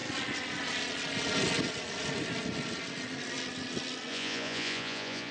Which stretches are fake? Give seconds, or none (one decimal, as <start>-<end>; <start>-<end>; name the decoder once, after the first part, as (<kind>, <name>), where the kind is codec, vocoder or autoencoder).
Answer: 4.1-5.3 (vocoder, Vocos)